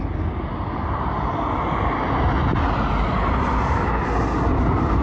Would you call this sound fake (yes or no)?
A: no